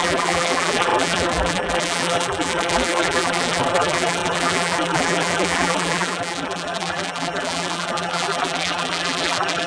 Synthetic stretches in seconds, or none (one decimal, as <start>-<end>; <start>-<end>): 0.0-9.7